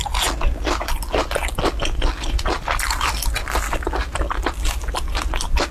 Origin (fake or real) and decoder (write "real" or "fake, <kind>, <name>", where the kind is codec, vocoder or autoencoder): real